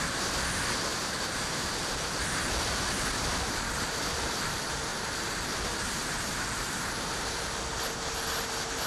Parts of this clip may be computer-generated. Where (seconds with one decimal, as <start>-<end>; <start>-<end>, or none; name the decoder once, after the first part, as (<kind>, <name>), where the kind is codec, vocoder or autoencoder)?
0.9-2.2 (vocoder, BigVGAN v2); 4.9-7.4

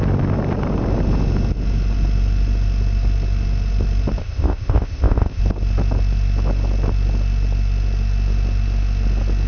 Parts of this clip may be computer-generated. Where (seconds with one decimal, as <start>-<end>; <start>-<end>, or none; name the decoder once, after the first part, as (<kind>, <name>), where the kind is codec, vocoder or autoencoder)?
4.2-5.4 (codec, ZipCodec)

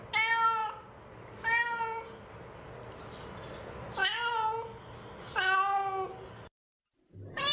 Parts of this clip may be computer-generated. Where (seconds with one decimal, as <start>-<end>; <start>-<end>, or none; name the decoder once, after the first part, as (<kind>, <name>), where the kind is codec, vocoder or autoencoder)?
none

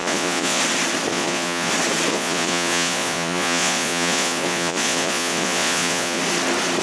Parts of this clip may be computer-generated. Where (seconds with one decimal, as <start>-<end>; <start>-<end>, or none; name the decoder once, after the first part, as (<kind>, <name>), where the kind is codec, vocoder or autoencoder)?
0.0-0.6 (vocoder, Vocos); 1.1-1.7; 2.1-6.2

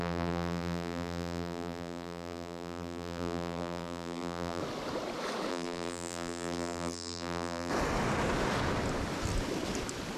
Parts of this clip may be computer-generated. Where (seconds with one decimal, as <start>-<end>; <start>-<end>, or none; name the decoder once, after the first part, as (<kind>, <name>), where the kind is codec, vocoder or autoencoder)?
0.0-4.6 (vocoder, BigVGAN v2); 5.5-7.7